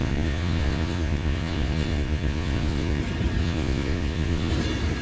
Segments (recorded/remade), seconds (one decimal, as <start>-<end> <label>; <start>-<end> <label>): 0.0-3.0 remade; 3.0-3.4 recorded; 3.4-4.5 remade; 4.5-5.0 recorded